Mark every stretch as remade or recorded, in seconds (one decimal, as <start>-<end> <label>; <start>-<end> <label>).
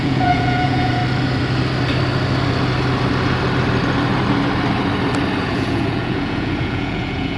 0.0-1.0 remade; 1.0-5.4 recorded; 5.4-7.4 remade